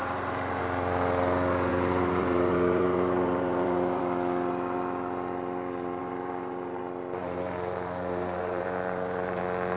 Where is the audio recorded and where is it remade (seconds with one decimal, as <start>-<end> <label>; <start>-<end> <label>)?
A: 0.0-0.6 remade; 0.6-1.7 recorded; 1.7-4.0 remade; 4.0-6.0 recorded; 6.0-6.8 remade; 6.8-7.2 recorded; 7.2-9.4 remade; 9.4-9.8 recorded